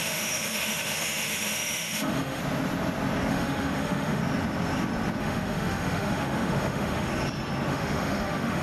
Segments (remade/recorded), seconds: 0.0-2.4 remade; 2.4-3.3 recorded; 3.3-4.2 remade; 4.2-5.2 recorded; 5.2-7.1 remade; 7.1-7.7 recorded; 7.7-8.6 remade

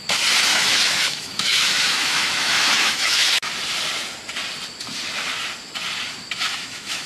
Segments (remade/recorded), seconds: 0.0-0.5 recorded; 0.5-3.5 remade; 3.5-6.5 recorded; 6.5-7.1 remade

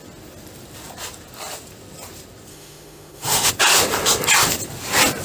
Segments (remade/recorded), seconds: 0.0-2.5 recorded; 2.5-3.5 remade; 3.5-5.2 recorded

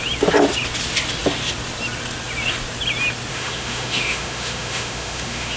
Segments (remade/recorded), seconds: 0.0-3.3 recorded; 3.3-5.6 remade

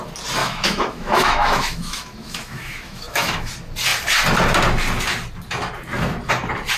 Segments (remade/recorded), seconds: 0.0-0.4 recorded; 0.4-3.5 remade; 3.5-6.8 recorded

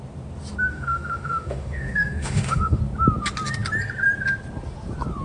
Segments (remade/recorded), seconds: 0.0-0.7 recorded; 0.7-2.8 remade; 2.8-5.2 recorded

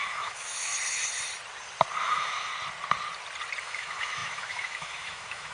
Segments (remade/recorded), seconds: 0.0-0.7 remade; 0.7-2.0 recorded; 2.0-2.5 remade; 2.5-3.6 recorded; 3.6-5.5 remade

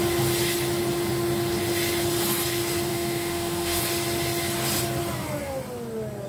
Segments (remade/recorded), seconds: 0.0-2.9 recorded; 2.9-3.8 remade; 3.8-6.3 recorded